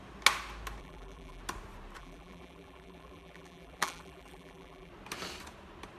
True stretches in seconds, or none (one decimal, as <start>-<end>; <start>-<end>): 0.0-0.8; 1.4-2.0; 4.9-6.0